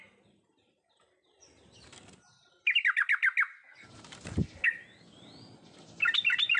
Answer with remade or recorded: recorded